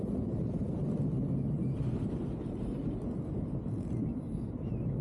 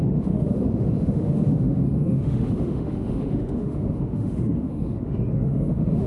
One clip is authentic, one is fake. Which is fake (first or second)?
second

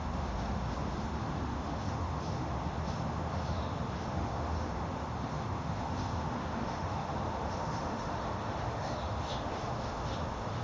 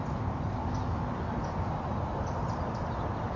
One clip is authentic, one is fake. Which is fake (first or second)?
first